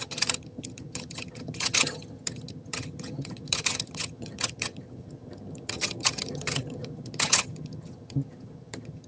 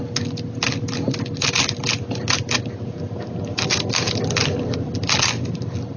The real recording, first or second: second